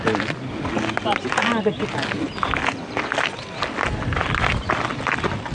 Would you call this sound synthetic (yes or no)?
no